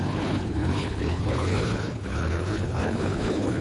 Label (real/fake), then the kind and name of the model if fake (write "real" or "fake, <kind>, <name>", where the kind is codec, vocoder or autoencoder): fake, codec, HILCodec